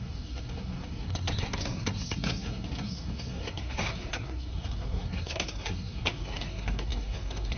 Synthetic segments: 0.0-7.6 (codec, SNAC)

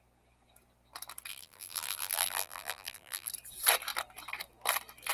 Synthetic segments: 1.3-3.3 (vocoder, BigVGAN v2)